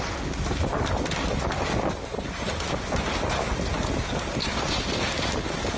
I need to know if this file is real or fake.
real